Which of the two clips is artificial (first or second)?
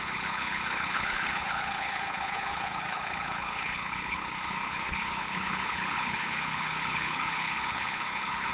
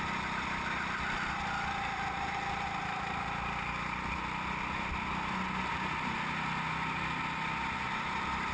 first